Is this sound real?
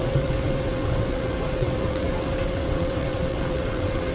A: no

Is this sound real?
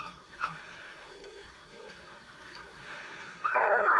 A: no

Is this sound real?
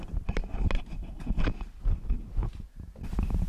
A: yes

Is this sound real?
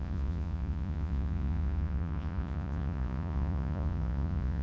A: no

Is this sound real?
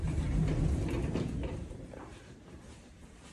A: no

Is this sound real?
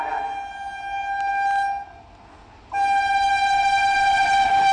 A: yes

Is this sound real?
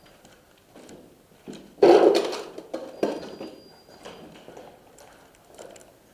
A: yes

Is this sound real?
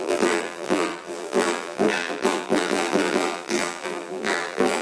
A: no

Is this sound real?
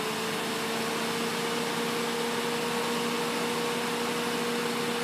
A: yes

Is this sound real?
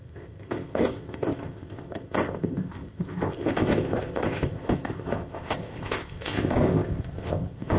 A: no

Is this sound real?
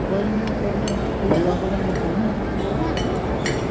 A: yes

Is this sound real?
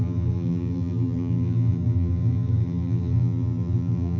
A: no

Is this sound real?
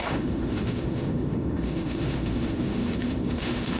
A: no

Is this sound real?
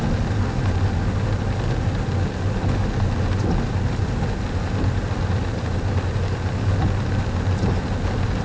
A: yes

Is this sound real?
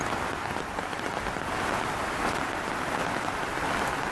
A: yes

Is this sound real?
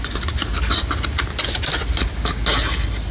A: yes